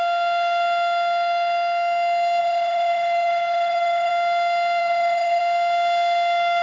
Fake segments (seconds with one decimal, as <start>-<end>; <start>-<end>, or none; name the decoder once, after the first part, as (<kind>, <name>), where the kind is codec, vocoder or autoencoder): 2.4-4.1 (vocoder, HiFi-GAN); 4.8-5.4